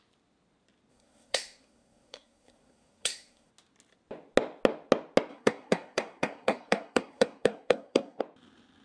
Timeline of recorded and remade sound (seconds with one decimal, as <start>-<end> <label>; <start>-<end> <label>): 0.0-0.9 recorded; 0.9-3.5 remade; 3.5-5.3 recorded; 5.3-8.2 remade; 8.2-8.8 recorded